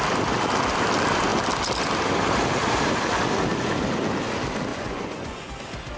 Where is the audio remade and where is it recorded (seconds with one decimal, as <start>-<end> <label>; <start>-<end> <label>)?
0.0-4.7 recorded; 4.7-5.5 remade; 5.5-6.0 recorded